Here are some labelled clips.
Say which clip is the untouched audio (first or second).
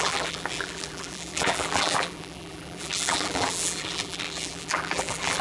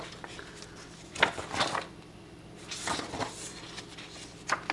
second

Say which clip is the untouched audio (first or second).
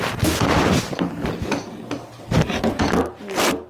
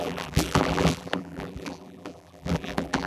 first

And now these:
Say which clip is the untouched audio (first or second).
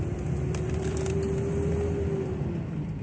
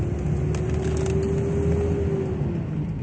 second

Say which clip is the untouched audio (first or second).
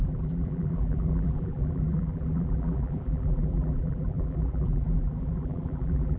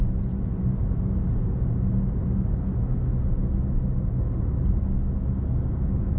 second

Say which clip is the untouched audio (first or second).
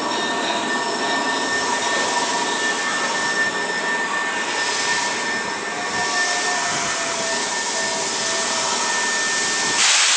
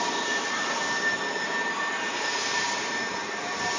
first